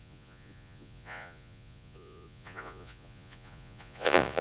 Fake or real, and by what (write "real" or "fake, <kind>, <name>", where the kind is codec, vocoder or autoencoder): fake, vocoder, Vocos